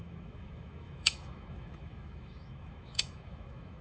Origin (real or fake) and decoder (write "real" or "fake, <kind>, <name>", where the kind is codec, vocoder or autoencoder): fake, autoencoder, DAC-VAE